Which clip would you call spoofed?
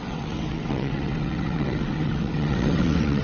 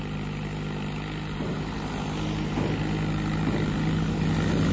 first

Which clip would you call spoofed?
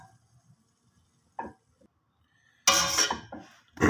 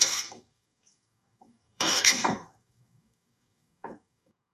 second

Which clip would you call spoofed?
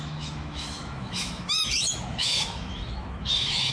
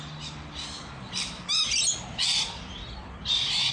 first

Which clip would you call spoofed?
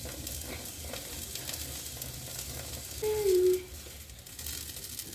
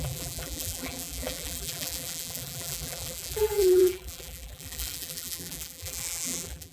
second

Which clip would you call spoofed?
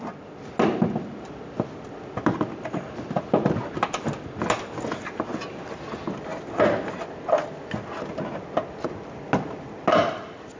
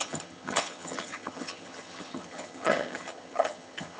second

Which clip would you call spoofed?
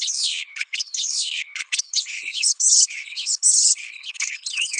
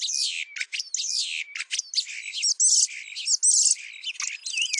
first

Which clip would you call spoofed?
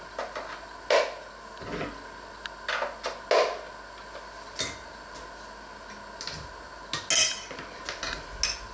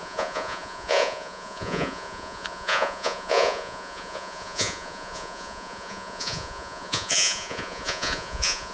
second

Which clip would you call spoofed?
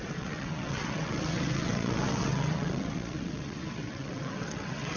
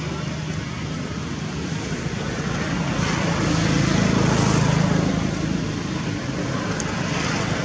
first